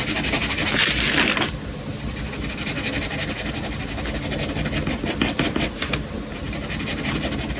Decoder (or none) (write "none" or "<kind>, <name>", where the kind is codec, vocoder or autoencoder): none